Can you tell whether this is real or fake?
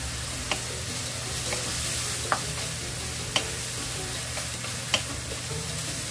real